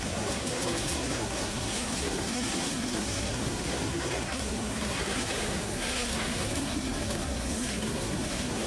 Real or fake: fake